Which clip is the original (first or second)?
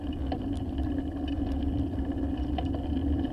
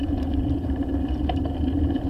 first